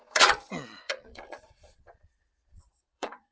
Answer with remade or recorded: remade